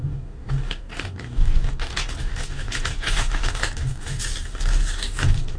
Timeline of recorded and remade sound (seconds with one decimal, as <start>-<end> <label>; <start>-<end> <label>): 0.0-5.6 remade